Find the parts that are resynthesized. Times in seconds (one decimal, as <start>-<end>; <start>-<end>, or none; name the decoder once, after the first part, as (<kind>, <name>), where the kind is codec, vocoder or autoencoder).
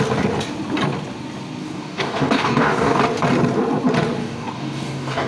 1.6-3.0 (codec, DAC); 4.2-5.3